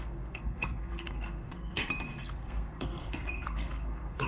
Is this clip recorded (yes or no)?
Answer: no